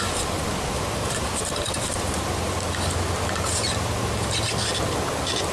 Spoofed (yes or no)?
no